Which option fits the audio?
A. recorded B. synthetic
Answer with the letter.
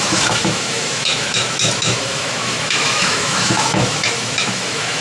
B